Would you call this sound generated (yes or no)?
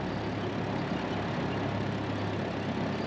no